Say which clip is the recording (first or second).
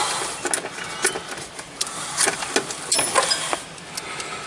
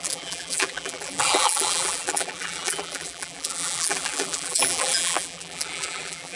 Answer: first